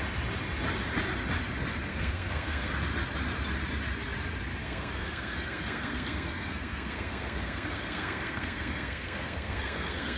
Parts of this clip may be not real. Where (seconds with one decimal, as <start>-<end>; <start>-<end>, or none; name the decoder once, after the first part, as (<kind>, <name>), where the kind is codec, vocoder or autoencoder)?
1.9-2.7 (codec, SNAC); 4.6-10.2